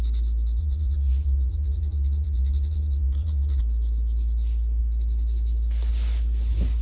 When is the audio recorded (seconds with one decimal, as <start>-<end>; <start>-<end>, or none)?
0.0-0.6; 3.6-6.8